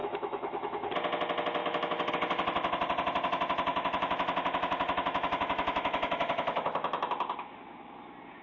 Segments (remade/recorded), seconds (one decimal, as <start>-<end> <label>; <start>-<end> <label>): 0.0-0.9 remade; 0.9-1.6 recorded; 1.6-2.1 remade; 2.1-3.7 recorded; 3.7-7.1 remade; 7.1-8.4 recorded

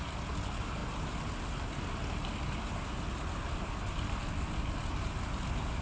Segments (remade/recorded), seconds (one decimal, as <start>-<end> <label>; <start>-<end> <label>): 0.0-5.8 recorded

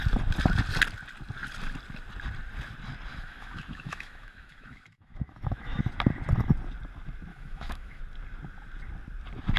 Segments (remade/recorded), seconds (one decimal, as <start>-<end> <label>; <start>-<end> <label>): 0.0-3.1 recorded; 3.1-5.8 remade; 5.8-7.3 recorded; 7.3-8.0 remade; 8.0-9.6 recorded

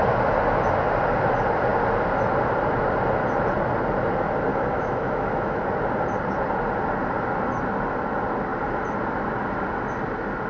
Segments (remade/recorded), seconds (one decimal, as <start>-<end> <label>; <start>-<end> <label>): 0.0-4.5 recorded; 4.5-5.6 remade; 5.6-10.5 recorded

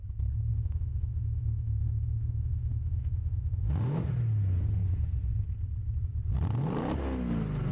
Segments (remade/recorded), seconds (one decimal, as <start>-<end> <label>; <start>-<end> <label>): 0.0-0.5 recorded; 0.5-4.1 remade; 4.1-7.7 recorded